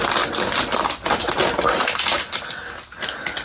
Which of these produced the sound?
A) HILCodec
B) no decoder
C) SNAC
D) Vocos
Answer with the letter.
B